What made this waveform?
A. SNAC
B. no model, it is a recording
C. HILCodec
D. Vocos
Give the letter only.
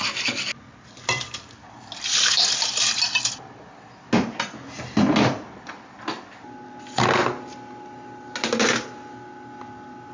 B